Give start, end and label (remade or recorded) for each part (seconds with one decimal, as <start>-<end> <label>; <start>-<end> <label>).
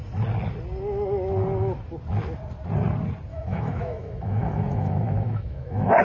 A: 0.0-3.3 recorded; 3.3-6.0 remade